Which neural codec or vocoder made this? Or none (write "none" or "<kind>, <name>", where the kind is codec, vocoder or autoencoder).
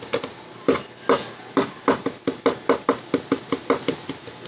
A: none